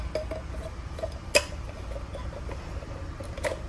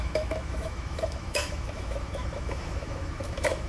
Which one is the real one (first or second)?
first